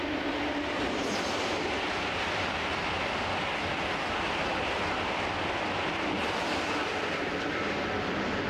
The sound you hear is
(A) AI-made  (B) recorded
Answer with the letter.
B